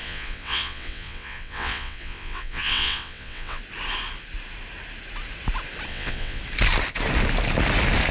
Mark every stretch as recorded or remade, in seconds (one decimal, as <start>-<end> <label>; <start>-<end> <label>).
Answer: 0.0-3.6 remade; 3.6-5.9 recorded; 5.9-6.4 remade; 6.4-8.1 recorded